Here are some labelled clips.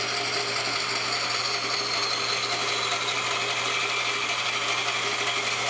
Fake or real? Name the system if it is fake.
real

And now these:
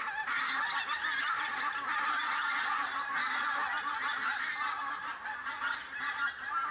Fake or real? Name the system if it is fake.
real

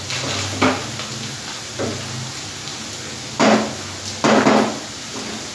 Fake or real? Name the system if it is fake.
real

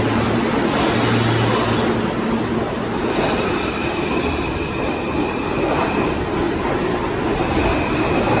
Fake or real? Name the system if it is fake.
real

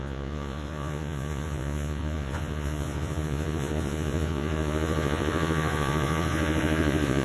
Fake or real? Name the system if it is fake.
fake, vocoder, Vocos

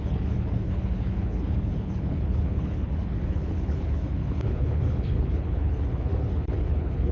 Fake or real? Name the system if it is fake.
fake, codec, HILCodec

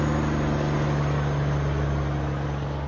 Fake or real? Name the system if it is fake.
real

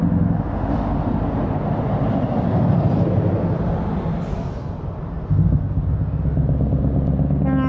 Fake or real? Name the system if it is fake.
real